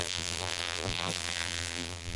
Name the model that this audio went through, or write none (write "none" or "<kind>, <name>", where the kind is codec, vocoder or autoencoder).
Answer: vocoder, BigVGAN v2